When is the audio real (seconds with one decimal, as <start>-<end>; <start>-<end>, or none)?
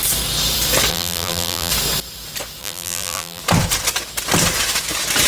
0.0-0.9; 1.7-2.6; 3.4-5.3